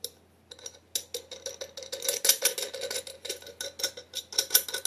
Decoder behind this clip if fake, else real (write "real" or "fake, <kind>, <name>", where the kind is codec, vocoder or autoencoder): real